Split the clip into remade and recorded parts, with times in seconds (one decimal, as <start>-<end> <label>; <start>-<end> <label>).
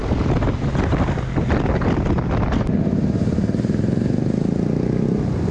0.0-5.5 recorded